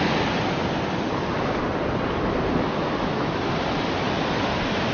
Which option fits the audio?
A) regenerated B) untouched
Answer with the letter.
B